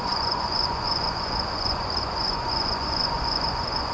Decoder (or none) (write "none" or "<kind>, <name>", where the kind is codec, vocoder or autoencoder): vocoder, Vocos